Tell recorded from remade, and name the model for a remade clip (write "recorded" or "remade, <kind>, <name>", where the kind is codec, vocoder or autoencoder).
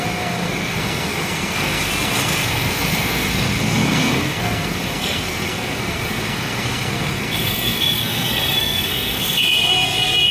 remade, codec, SNAC